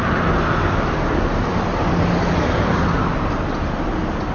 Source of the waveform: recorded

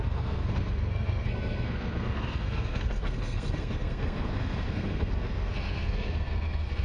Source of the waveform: remade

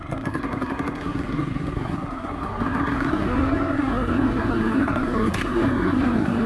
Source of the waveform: remade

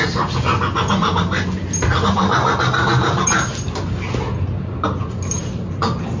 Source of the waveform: recorded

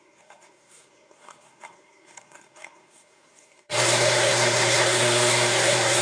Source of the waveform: remade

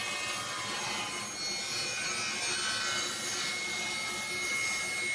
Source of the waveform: recorded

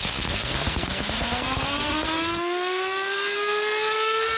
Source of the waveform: remade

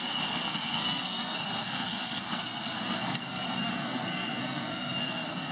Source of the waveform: remade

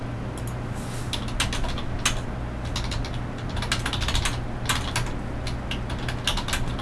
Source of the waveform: recorded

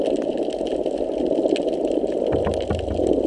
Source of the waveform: recorded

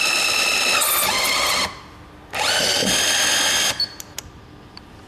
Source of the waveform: recorded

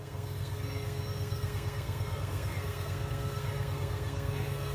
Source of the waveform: remade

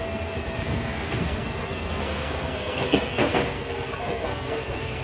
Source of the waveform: remade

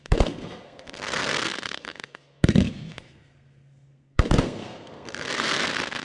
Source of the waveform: remade